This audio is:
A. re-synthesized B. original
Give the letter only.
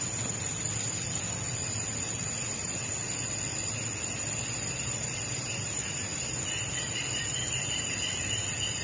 B